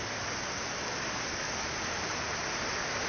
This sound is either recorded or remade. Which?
recorded